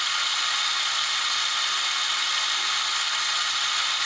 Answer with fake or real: real